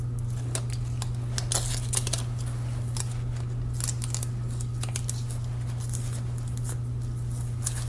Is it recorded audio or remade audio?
recorded